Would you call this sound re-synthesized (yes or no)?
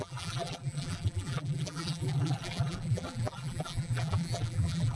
yes